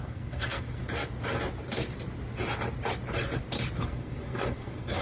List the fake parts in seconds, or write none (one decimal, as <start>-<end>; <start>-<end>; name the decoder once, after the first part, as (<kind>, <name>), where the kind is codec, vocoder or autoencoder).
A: 0.0-0.8 (codec, SNAC); 3.8-5.0